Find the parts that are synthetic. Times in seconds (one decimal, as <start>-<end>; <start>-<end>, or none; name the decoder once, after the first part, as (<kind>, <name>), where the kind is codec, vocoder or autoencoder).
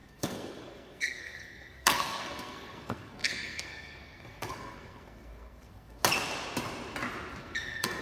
0.0-6.0 (codec, SNAC); 7.4-8.0